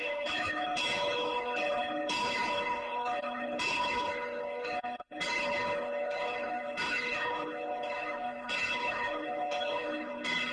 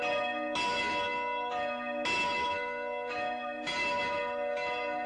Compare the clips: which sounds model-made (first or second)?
first